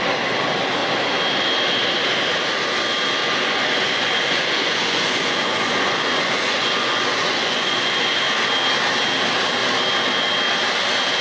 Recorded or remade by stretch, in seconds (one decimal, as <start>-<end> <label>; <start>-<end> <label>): 0.0-3.2 recorded; 3.2-8.2 remade; 8.2-11.2 recorded